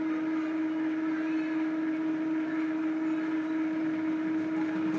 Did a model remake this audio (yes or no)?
no